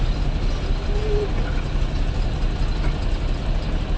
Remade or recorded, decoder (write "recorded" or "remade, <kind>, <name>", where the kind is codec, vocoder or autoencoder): recorded